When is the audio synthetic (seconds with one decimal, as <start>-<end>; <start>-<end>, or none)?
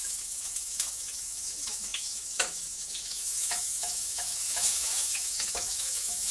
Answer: 0.0-6.3